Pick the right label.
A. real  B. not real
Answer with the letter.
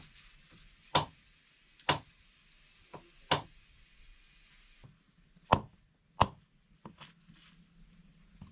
A